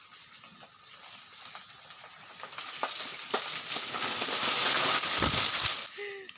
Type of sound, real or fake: real